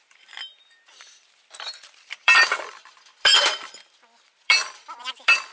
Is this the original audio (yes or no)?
no